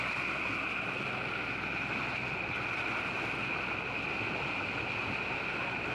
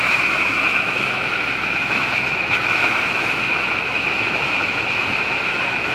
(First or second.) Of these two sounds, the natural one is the first